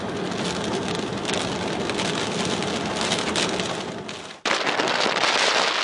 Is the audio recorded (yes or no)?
yes